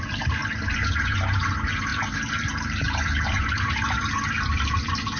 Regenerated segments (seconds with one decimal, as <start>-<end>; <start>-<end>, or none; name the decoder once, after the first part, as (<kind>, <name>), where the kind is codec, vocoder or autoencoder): 0.0-0.4 (vocoder, BigVGAN v2); 0.9-5.2